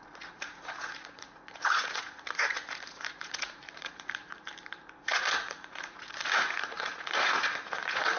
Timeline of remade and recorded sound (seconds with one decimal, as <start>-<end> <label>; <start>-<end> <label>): 0.0-4.5 remade; 4.5-5.0 recorded; 5.0-8.2 remade